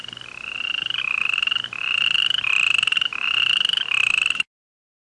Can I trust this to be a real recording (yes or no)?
yes